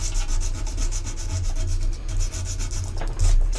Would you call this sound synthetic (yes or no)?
no